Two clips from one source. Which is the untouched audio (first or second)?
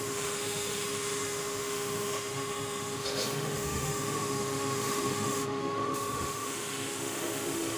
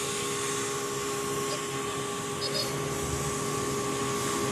second